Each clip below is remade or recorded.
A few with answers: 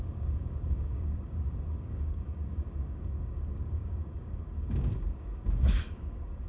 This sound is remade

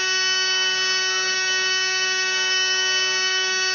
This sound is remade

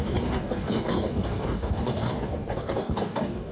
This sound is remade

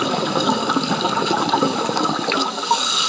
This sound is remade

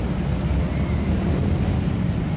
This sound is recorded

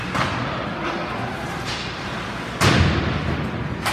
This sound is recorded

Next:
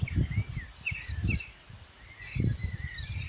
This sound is recorded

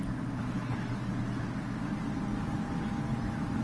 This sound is recorded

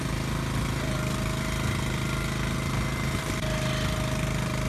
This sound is recorded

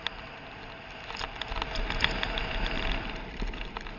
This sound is recorded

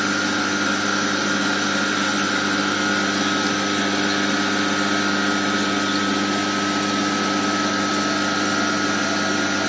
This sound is recorded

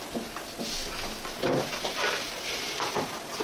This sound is recorded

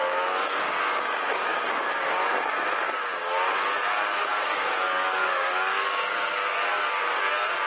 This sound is remade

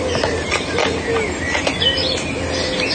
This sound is recorded